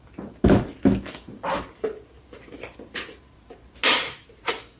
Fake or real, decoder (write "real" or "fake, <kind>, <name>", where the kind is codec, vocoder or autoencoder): real